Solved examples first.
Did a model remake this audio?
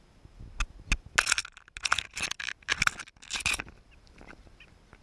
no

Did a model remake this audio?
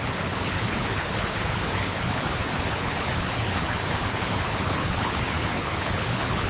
yes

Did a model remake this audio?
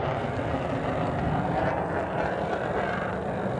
no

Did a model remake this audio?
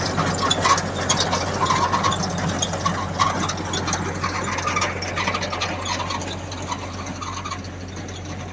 no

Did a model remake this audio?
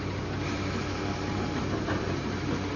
no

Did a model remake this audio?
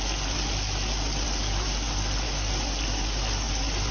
no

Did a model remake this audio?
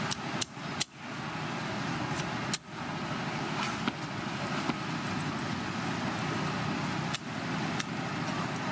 no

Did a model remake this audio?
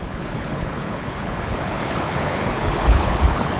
yes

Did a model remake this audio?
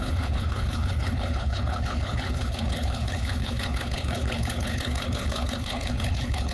yes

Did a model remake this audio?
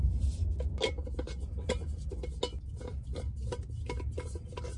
no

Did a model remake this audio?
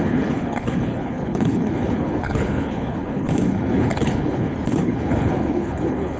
yes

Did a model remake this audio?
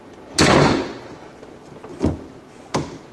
no